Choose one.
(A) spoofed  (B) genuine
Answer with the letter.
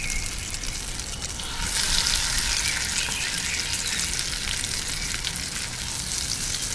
B